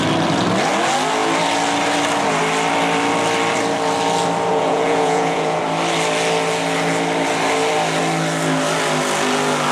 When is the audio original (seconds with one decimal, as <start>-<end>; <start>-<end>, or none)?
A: 0.0-4.5; 5.6-9.7